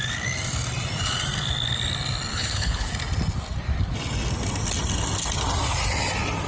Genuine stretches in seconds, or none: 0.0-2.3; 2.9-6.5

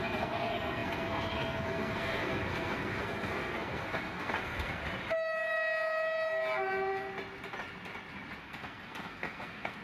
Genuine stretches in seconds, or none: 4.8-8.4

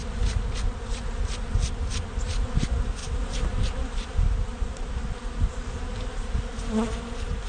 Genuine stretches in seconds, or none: 0.0-3.0

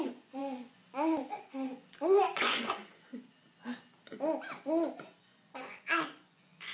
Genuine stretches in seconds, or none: 3.1-5.2

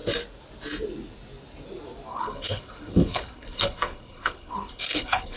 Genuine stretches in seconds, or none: 0.0-2.1

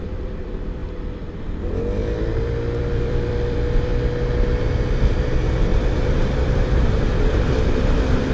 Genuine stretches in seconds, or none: 0.8-2.0; 3.9-5.0